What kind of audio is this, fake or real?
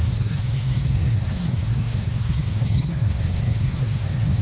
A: fake